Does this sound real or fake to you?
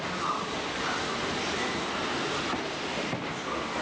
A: real